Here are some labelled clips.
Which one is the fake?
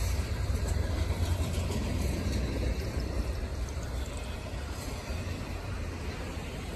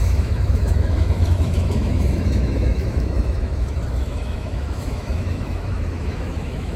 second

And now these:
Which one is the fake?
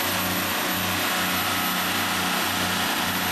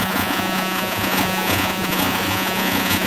second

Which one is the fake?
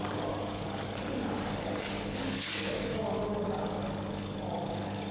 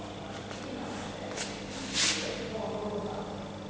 first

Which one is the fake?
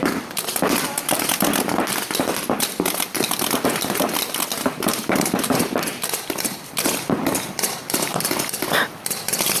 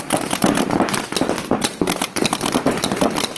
first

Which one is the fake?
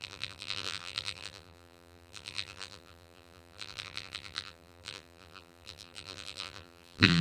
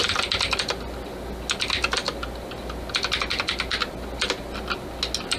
first